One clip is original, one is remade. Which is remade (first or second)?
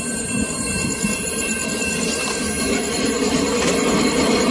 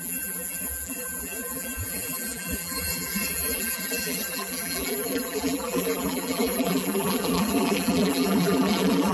second